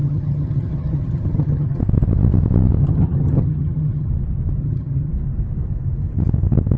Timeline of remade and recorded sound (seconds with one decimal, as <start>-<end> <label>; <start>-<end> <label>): 0.0-1.8 remade; 1.8-2.8 recorded; 2.8-4.1 remade; 4.1-4.6 recorded; 4.6-5.1 remade; 5.1-6.8 recorded